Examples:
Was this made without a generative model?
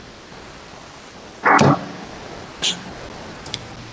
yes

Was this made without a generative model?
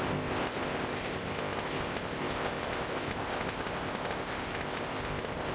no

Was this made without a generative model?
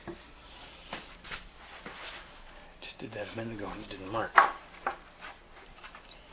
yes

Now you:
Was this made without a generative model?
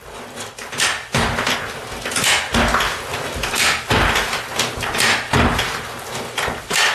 yes